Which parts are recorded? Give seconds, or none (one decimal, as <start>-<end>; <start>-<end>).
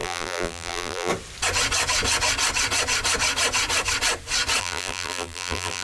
1.1-4.6